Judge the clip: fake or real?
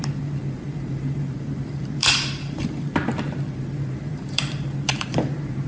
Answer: fake